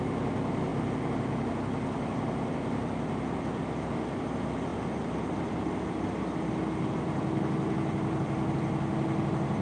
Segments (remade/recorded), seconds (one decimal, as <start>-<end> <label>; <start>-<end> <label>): 0.0-9.6 recorded